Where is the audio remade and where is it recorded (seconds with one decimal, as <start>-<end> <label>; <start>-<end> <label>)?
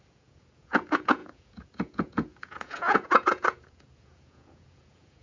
0.0-5.2 remade